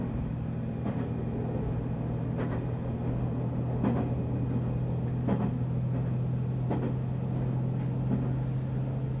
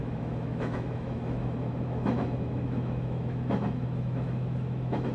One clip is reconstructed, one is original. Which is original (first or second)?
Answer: first